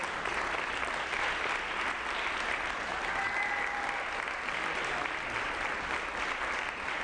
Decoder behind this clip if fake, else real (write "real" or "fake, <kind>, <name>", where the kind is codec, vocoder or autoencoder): real